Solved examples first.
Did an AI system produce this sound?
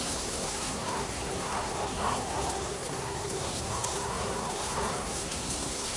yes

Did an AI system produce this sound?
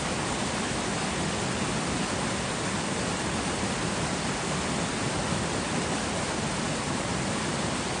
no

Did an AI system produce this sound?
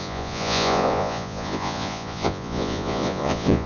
yes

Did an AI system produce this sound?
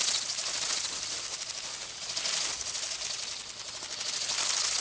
no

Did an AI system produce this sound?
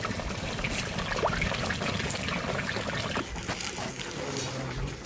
no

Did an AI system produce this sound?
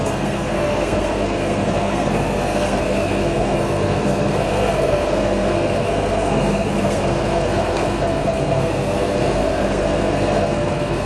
yes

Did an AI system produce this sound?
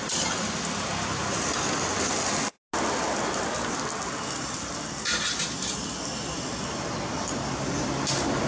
no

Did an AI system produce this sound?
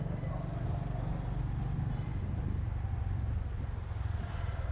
no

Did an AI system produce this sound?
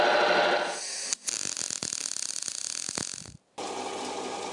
no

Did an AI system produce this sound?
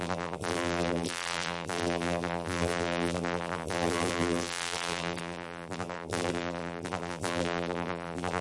yes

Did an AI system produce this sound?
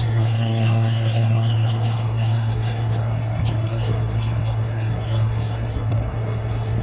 yes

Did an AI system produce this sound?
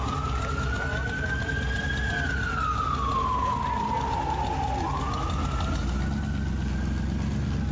no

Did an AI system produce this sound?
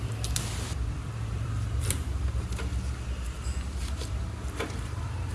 yes